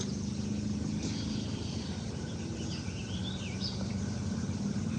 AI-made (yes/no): no